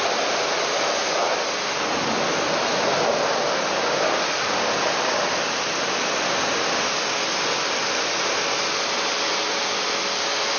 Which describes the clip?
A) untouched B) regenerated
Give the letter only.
A